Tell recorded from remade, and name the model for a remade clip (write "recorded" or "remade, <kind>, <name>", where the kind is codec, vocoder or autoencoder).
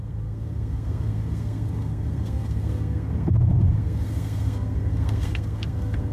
remade, codec, SNAC